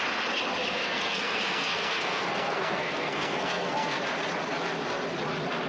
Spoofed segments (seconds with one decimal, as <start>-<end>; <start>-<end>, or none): 0.6-4.0

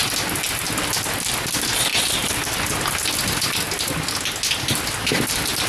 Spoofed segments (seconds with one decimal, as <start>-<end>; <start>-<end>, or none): none

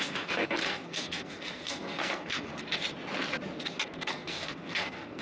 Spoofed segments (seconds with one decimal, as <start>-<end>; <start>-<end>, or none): 0.0-2.5; 4.1-5.2

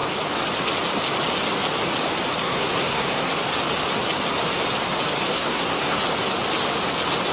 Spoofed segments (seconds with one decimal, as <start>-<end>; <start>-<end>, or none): 2.4-3.3; 5.3-6.0

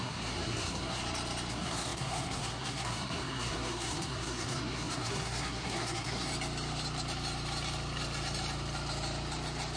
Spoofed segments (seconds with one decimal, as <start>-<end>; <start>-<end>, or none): 0.0-1.0; 1.5-6.3

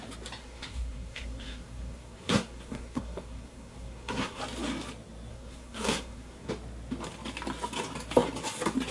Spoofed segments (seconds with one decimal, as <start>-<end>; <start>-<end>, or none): 0.4-4.4; 5.3-6.5

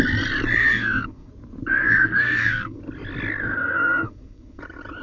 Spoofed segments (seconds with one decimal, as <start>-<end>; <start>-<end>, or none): 0.6-1.3; 1.8-2.8; 3.6-4.6

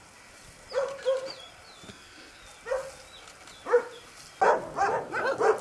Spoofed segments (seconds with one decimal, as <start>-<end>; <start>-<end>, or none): 1.9-2.4